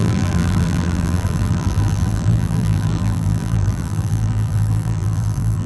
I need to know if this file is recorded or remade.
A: remade